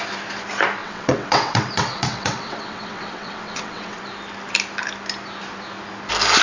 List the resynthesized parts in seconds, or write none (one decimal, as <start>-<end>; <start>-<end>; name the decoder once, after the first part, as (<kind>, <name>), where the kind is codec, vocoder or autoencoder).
0.8-4.0 (vocoder, WaveNeXt)

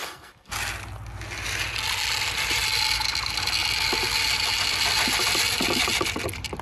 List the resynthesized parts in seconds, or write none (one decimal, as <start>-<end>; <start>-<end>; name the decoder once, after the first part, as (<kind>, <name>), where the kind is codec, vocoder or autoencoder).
0.0-0.5 (codec, SNAC)

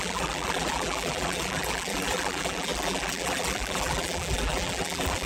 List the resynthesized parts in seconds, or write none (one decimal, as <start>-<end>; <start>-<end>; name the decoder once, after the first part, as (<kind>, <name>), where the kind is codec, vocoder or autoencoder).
0.0-5.3 (vocoder, BigVGAN v2)

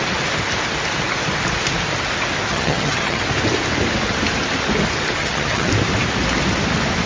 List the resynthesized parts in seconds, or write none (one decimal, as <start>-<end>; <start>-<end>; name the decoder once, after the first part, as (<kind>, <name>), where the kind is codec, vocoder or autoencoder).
2.5-3.2 (vocoder, HiFi-GAN); 5.2-5.7

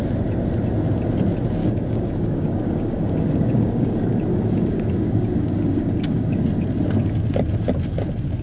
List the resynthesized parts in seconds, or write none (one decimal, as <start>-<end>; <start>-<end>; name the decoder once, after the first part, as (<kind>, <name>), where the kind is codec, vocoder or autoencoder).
1.6-6.4 (codec, DAC)

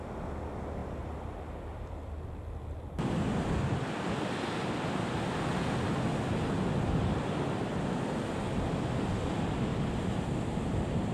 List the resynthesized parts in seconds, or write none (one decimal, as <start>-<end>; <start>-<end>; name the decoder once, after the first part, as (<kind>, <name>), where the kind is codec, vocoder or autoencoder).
9.7-10.3 (vocoder, BigVGAN v2)

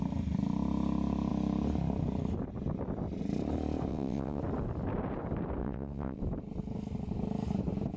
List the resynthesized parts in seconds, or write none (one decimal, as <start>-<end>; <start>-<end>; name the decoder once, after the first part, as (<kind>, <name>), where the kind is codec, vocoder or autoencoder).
3.9-4.4 (vocoder, WaveNeXt); 5.6-6.2